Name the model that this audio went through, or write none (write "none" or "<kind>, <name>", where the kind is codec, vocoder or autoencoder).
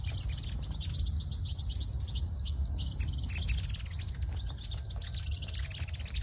none